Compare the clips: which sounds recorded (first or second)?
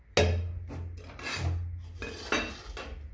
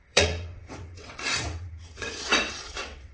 first